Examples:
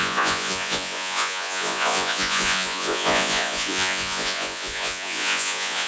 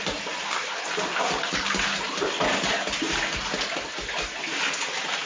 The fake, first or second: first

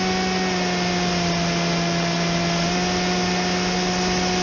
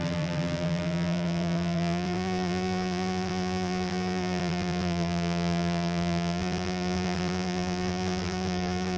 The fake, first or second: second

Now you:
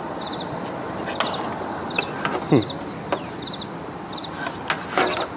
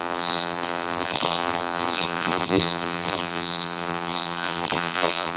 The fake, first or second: second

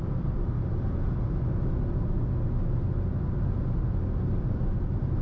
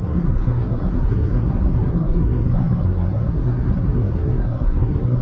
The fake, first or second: second